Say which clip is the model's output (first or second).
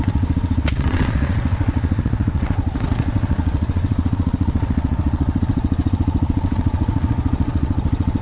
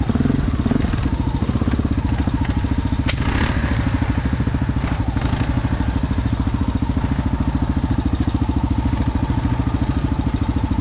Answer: first